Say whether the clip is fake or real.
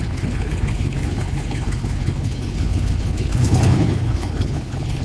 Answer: fake